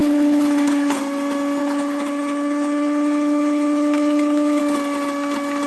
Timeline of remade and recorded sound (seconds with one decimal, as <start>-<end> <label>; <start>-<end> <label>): 0.0-1.0 remade; 1.0-1.6 recorded; 1.6-4.6 remade; 4.6-5.7 recorded